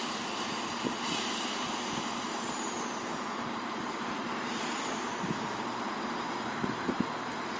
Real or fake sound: fake